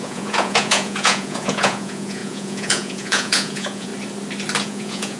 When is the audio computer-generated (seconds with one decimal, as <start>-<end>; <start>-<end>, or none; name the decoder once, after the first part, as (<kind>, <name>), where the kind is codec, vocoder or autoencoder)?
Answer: 0.0-3.9 (vocoder, Vocos); 4.6-5.2